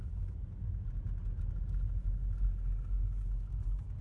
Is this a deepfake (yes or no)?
no